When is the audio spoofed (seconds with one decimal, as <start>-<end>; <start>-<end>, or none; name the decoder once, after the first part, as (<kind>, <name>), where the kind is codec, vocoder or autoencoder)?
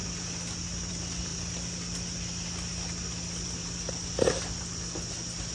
none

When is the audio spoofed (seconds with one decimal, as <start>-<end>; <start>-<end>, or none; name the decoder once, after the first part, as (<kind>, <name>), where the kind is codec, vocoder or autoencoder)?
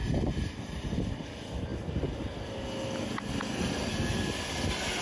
none